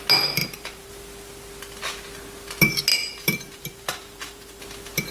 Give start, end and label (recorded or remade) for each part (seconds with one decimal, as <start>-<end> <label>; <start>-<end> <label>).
0.0-0.4 recorded; 0.4-0.9 remade; 0.9-2.9 recorded; 2.9-4.6 remade; 4.6-5.1 recorded